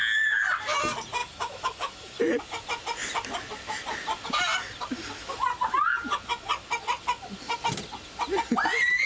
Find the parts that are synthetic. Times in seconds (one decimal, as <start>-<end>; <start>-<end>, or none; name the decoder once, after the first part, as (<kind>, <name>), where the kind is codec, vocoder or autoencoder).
1.2-2.4 (autoencoder, DAC-VAE)